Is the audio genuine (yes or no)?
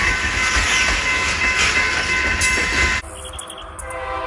yes